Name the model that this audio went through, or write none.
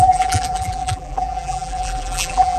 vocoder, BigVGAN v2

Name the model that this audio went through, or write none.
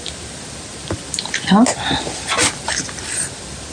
none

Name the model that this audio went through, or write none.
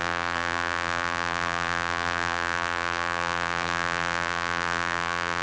vocoder, BigVGAN v2